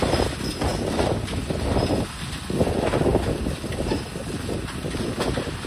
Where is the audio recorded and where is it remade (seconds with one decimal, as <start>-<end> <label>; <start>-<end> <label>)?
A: 0.0-5.7 recorded